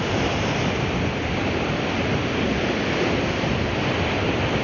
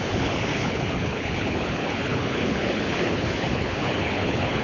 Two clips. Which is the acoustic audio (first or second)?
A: first